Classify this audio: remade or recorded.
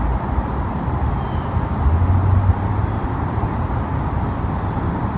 recorded